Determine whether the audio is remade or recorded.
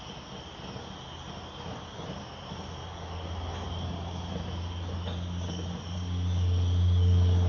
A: recorded